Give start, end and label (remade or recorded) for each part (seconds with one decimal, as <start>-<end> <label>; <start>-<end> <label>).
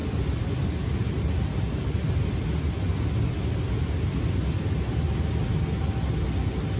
0.0-6.8 recorded